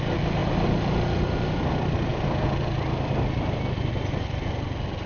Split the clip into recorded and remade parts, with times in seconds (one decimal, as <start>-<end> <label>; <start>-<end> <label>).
0.0-5.1 recorded